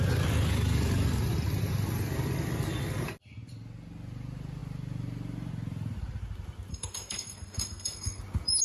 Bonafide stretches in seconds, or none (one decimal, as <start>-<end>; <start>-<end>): 0.0-6.7; 8.2-8.6